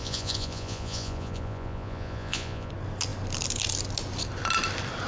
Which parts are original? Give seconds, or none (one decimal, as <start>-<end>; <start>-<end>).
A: 2.7-5.1